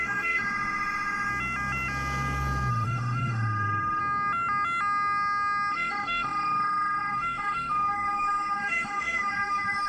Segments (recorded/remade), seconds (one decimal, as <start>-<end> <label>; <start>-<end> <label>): 0.0-1.3 remade; 1.3-2.7 recorded; 2.7-4.0 remade; 4.0-5.7 recorded; 5.7-9.9 remade